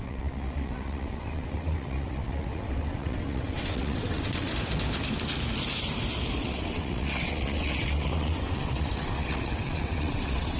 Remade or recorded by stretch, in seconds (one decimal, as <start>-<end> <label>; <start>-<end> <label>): 0.0-4.5 remade; 4.5-6.4 recorded; 6.4-10.6 remade